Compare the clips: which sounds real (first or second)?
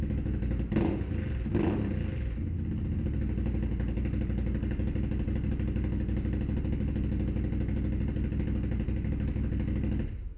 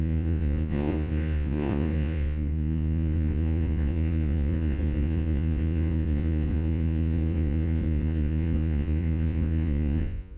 first